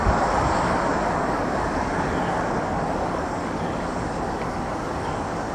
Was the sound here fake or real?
fake